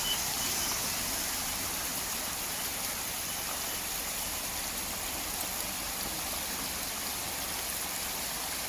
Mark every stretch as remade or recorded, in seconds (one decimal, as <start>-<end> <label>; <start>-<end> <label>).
0.0-8.7 recorded

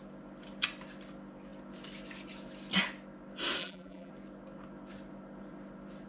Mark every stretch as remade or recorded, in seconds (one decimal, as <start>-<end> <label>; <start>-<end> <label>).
0.0-3.6 recorded; 3.6-4.1 remade; 4.1-6.1 recorded

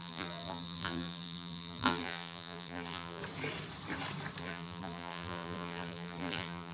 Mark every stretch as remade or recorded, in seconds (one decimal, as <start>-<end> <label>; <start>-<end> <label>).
0.0-3.2 remade; 3.2-4.4 recorded; 4.4-6.7 remade

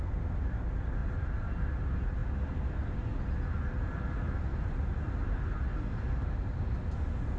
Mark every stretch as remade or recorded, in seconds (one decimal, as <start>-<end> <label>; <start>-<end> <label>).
0.0-1.0 recorded; 1.0-1.8 remade; 1.8-2.2 recorded; 2.2-2.8 remade; 2.8-4.5 recorded; 4.5-5.4 remade; 5.4-7.4 recorded

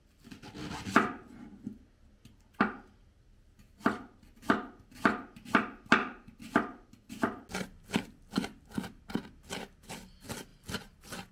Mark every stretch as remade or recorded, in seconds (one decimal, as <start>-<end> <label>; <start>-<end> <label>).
0.0-11.3 recorded

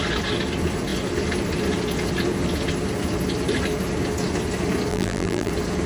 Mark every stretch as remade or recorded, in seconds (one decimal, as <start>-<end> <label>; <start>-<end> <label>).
0.0-4.9 recorded; 4.9-5.5 remade; 5.5-5.9 recorded